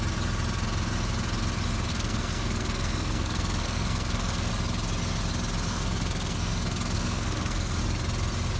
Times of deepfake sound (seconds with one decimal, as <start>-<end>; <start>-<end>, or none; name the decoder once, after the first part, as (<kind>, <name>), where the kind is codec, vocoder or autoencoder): 1.9-4.5 (codec, SNAC); 5.7-7.8